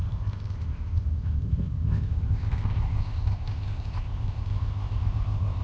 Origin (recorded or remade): remade